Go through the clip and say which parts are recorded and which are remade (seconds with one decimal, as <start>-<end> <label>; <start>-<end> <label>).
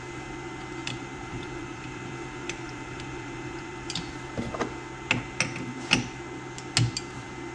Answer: 0.0-0.8 recorded; 0.8-4.5 remade; 4.5-7.5 recorded